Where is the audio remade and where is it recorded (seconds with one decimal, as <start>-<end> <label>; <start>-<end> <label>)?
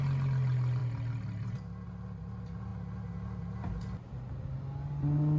0.0-5.4 recorded